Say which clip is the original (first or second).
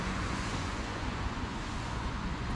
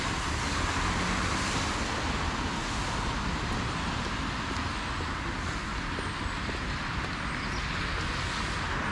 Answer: second